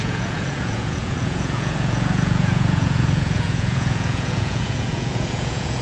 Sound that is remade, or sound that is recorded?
remade